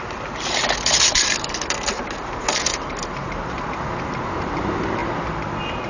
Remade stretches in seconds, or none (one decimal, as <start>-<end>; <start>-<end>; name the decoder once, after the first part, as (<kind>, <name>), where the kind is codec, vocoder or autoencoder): 0.0-5.0 (vocoder, BigVGAN v2)